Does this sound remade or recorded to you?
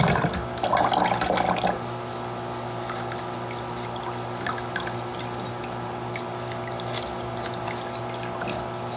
recorded